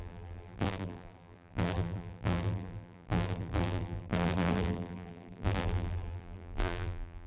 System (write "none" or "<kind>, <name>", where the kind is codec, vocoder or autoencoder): vocoder, BigVGAN v2